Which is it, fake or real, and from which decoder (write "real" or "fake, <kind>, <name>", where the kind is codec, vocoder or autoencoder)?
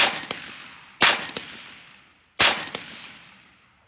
real